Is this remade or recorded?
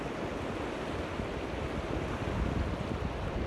recorded